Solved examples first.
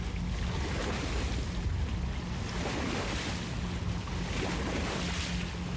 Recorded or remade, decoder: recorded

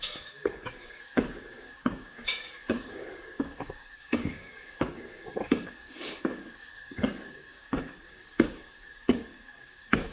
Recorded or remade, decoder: remade, codec, DAC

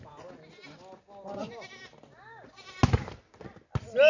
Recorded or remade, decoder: recorded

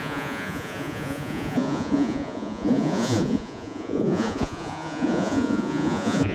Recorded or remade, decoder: remade, vocoder, Vocos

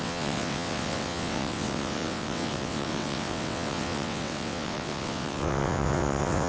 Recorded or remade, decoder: remade, vocoder, WaveNeXt